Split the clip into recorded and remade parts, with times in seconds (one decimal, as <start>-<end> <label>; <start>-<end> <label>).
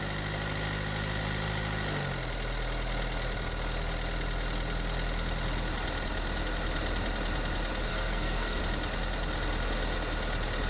0.0-7.9 recorded; 7.9-8.6 remade; 8.6-10.7 recorded